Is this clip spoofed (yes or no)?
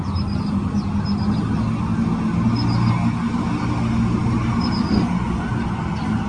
no